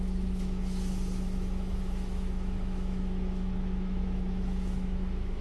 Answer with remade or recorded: remade